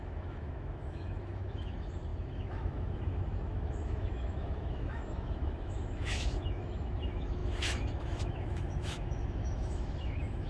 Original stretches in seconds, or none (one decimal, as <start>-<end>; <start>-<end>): none